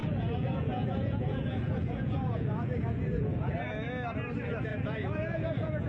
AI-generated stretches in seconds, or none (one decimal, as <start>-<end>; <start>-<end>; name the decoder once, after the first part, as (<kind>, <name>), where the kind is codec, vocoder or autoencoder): 0.0-3.5 (vocoder, Vocos); 4.7-5.9